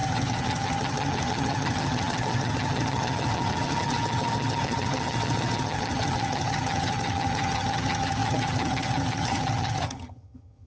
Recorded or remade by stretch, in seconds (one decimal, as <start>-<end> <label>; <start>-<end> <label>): 0.0-10.7 remade